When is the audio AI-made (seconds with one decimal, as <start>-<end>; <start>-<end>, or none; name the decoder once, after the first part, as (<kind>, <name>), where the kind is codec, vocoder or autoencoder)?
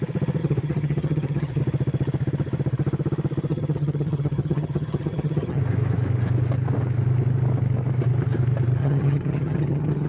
0.4-1.6 (vocoder, HiFi-GAN); 3.5-5.6; 8.8-10.1